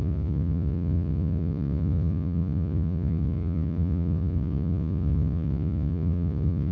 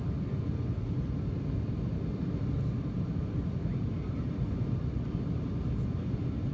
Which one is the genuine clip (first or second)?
second